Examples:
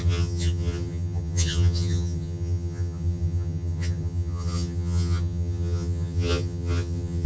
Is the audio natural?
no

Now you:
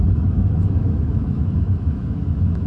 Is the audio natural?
no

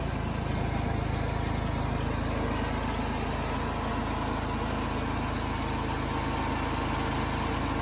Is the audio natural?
yes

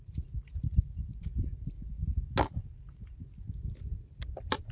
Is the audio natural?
yes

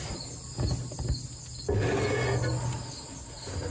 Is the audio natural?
yes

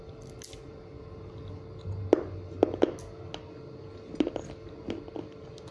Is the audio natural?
yes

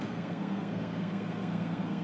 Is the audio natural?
no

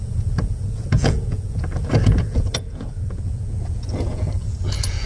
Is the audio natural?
no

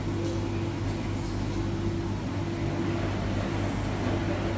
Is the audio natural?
yes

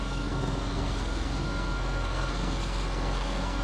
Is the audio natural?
no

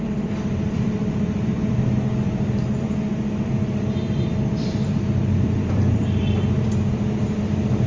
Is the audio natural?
no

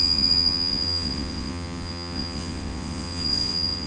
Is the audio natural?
no